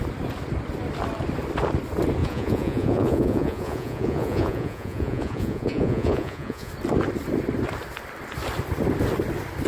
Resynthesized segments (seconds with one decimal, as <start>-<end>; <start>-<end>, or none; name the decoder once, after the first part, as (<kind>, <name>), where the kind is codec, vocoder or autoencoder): 2.2-6.7 (vocoder, Vocos)